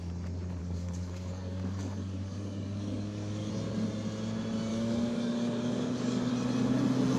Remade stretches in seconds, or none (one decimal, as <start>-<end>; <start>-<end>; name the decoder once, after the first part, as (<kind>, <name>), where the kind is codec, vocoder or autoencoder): 0.6-3.5 (codec, DAC); 4.7-6.3